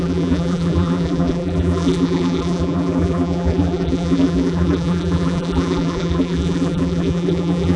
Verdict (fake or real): fake